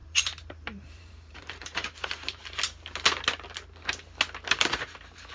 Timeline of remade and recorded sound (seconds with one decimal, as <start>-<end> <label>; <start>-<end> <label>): 0.0-2.4 remade; 2.4-5.3 recorded

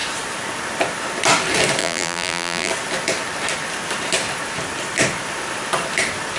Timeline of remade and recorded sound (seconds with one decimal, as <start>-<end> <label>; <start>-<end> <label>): 0.0-1.8 recorded; 1.8-2.7 remade; 2.7-6.4 recorded

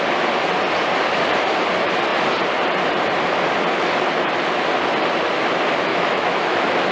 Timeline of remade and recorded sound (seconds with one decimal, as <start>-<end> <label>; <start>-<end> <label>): 0.0-5.9 recorded; 5.9-6.9 remade

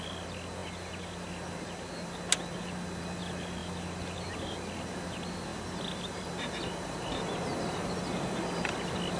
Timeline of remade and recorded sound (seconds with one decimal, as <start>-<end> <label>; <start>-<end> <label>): 0.0-9.2 recorded

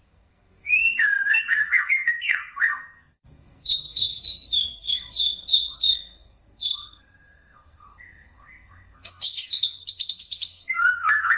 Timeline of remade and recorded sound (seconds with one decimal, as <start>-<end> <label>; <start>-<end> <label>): 0.0-11.4 remade

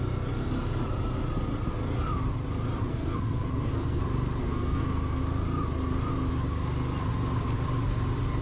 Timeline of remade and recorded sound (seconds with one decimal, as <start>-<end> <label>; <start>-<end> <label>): 0.0-2.9 recorded; 2.9-4.0 remade; 4.0-4.4 recorded; 4.4-5.2 remade; 5.2-8.4 recorded

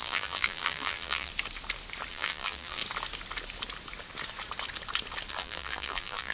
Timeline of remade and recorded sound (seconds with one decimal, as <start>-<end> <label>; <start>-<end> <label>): 0.0-1.3 remade; 1.3-2.1 recorded; 2.1-2.8 remade; 2.8-5.3 recorded; 5.3-6.3 remade